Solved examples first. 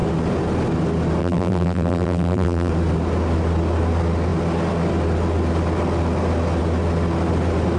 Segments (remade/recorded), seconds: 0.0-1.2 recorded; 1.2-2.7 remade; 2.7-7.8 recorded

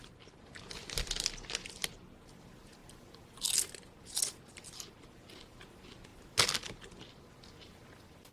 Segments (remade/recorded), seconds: 0.0-8.3 recorded

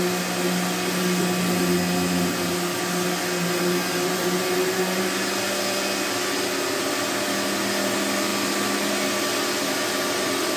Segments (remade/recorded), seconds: 0.0-10.6 recorded

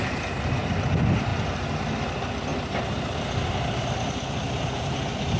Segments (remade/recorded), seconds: 0.0-1.3 recorded; 1.3-2.1 remade; 2.1-2.5 recorded; 2.5-5.4 remade

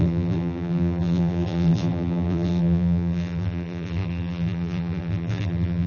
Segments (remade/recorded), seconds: 0.0-5.9 remade

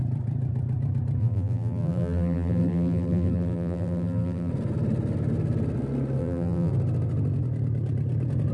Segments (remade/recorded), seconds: 0.0-1.2 recorded; 1.2-4.5 remade; 4.5-6.2 recorded; 6.2-6.7 remade; 6.7-8.5 recorded

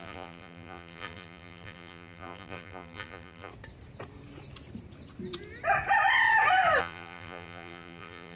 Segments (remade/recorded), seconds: 0.0-3.5 remade; 3.5-6.8 recorded; 6.8-8.4 remade

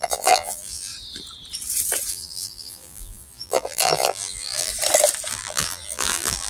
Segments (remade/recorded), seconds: 0.0-0.9 remade; 0.9-2.1 recorded; 2.1-4.7 remade; 4.7-5.3 recorded; 5.3-6.5 remade